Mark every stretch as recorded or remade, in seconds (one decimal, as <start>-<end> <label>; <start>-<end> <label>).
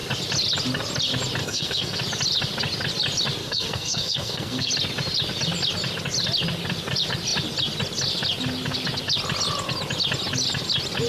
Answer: 0.0-1.4 recorded; 1.4-2.0 remade; 2.0-3.4 recorded; 3.4-4.7 remade; 4.7-11.1 recorded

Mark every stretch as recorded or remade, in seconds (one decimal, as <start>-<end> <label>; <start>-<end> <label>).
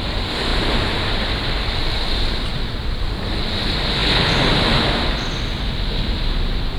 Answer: 0.0-2.5 recorded; 2.5-3.1 remade; 3.1-6.8 recorded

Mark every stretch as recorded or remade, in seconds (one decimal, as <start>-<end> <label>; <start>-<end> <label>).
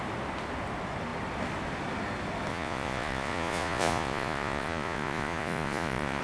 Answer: 0.0-2.5 recorded; 2.5-6.2 remade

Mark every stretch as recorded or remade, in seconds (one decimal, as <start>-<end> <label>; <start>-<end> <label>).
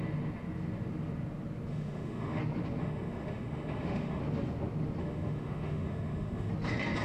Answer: 0.0-1.7 recorded; 1.7-2.4 remade; 2.4-2.8 recorded; 2.8-4.2 remade; 4.2-5.0 recorded; 5.0-6.5 remade; 6.5-7.0 recorded